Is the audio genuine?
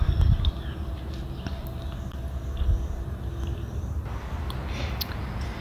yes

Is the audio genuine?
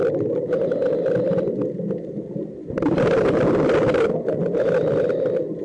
yes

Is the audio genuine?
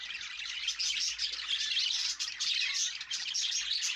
yes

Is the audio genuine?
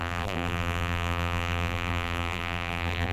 no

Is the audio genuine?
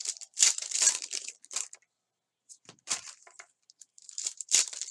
no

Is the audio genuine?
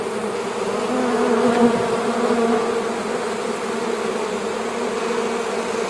yes